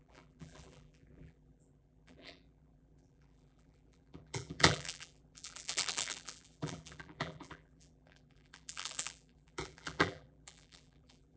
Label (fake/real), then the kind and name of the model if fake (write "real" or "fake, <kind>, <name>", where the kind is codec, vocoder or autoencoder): fake, vocoder, BigVGAN v2